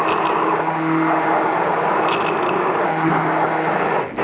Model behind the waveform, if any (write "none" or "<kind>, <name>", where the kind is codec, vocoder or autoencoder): none